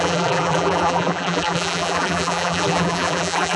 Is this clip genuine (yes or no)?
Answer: no